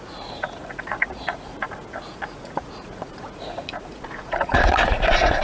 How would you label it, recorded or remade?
remade